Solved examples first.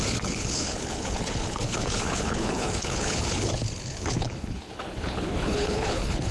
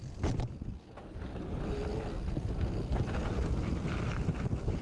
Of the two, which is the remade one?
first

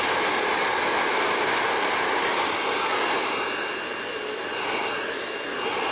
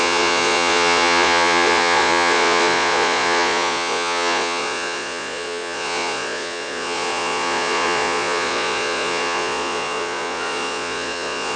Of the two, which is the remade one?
second